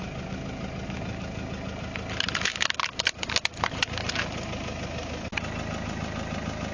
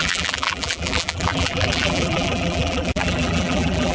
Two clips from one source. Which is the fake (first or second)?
second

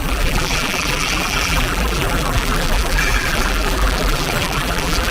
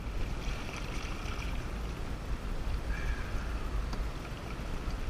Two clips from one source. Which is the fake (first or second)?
first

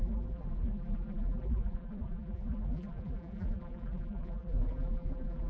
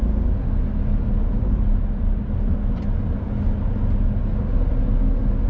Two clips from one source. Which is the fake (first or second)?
first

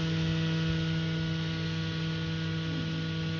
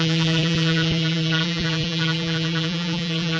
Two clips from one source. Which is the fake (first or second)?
second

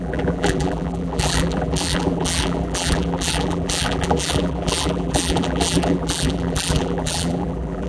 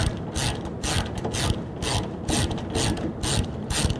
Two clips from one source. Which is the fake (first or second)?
first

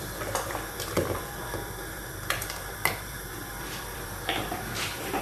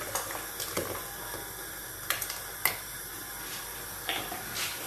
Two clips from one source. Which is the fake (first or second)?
first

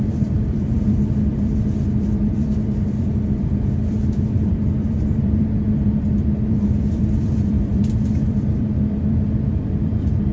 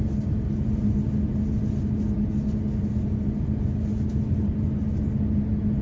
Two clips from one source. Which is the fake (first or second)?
first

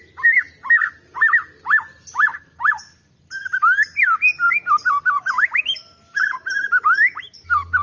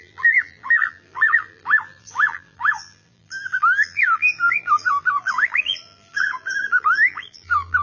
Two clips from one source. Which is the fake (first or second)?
second